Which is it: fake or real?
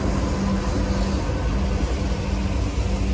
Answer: real